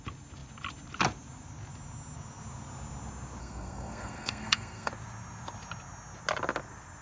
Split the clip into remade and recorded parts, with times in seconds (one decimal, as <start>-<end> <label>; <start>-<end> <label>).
0.0-3.4 recorded; 3.4-4.9 remade; 4.9-7.0 recorded